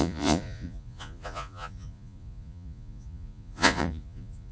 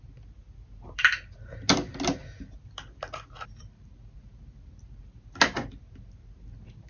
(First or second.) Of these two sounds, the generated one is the first